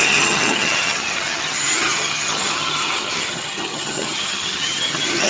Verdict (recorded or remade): remade